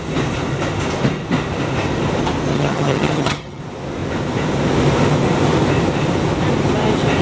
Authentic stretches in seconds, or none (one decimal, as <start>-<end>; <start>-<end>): 0.0-2.5; 3.6-7.2